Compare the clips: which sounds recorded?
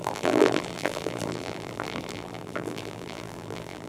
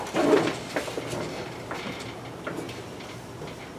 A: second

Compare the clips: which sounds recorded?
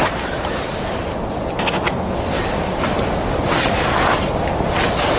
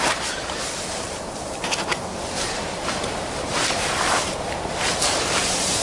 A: first